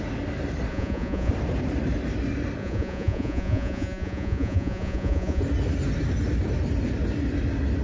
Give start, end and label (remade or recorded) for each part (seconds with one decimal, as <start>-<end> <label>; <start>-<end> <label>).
0.0-0.7 recorded; 0.7-1.3 remade; 1.3-2.6 recorded; 2.6-5.4 remade; 5.4-7.8 recorded